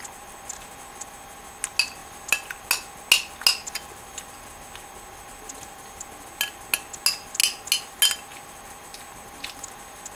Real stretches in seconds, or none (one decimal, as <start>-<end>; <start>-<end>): 0.0-10.2